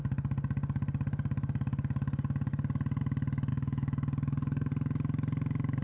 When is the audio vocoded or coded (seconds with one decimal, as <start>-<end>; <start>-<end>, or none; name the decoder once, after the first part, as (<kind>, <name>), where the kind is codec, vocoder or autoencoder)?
3.5-4.7 (codec, DAC)